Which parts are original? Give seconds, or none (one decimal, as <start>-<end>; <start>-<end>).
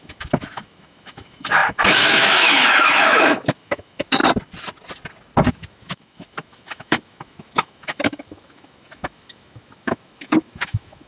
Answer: 4.2-5.5